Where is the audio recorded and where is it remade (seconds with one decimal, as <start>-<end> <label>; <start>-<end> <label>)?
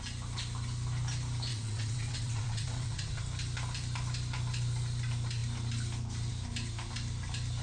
0.0-1.5 recorded; 1.5-3.2 remade; 3.2-7.6 recorded